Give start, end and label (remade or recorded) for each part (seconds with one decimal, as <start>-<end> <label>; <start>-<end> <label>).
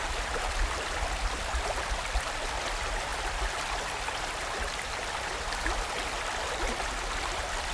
0.0-7.7 recorded